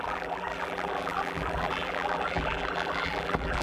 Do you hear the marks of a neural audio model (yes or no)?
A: yes